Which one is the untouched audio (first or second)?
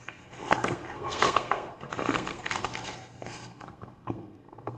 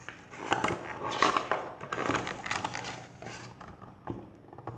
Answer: second